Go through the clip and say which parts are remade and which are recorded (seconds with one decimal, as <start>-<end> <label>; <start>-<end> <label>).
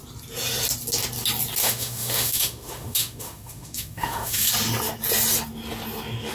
0.0-1.6 recorded; 1.6-4.5 remade; 4.5-6.3 recorded